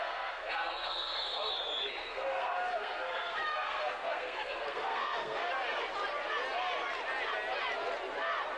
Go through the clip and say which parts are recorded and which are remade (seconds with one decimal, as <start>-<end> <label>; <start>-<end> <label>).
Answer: 0.0-1.5 remade; 1.5-2.0 recorded; 2.0-5.5 remade; 5.5-8.6 recorded